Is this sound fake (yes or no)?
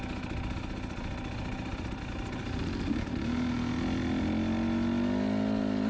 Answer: no